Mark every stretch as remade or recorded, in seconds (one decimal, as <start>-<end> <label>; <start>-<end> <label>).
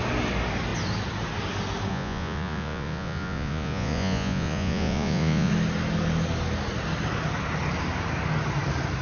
0.0-1.9 recorded; 1.9-5.5 remade; 5.5-9.0 recorded